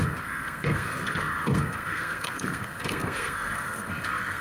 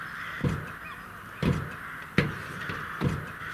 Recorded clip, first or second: second